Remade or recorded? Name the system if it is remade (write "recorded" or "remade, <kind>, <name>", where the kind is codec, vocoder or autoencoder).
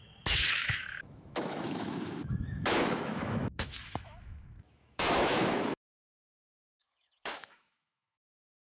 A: remade, autoencoder, DAC-VAE